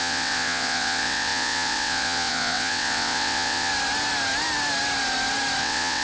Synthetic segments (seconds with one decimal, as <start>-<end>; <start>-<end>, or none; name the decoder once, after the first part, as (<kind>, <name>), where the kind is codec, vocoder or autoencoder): 0.0-3.7 (vocoder, WaveNeXt); 5.6-6.0